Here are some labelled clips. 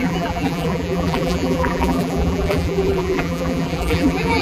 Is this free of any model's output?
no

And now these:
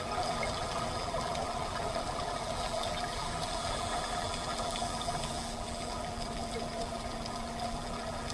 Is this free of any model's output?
no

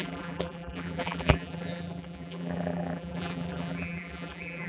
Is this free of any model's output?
no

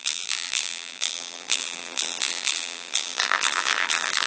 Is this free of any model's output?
no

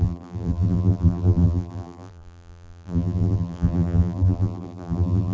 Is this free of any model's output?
no